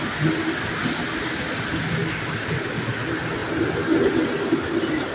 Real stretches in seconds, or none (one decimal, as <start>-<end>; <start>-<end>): 0.0-2.0; 2.8-5.1